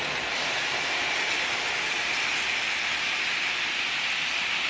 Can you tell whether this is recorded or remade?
recorded